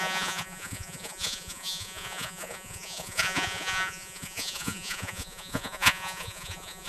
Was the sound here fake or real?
fake